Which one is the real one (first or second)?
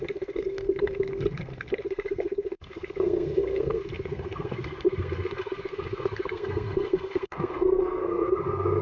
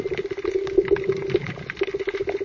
second